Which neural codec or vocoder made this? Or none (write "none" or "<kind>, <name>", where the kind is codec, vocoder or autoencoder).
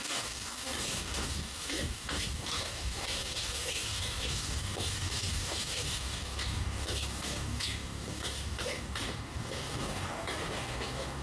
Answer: codec, DAC